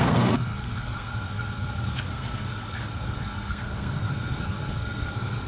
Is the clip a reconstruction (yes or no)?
yes